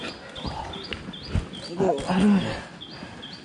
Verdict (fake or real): real